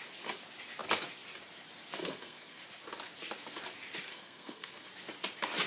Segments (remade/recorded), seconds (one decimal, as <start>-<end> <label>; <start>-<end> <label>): 0.0-2.0 recorded; 2.0-2.6 remade; 2.6-4.1 recorded; 4.1-4.9 remade; 4.9-5.7 recorded